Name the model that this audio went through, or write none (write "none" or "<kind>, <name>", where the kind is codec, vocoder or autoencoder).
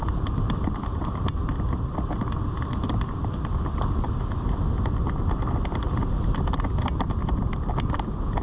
none